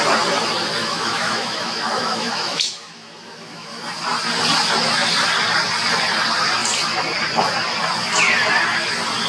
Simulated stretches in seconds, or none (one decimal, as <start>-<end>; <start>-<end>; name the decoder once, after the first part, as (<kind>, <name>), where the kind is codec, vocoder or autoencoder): 0.8-3.8 (autoencoder, DAC-VAE)